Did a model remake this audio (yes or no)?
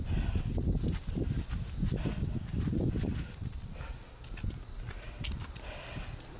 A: no